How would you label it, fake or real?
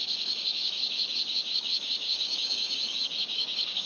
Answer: fake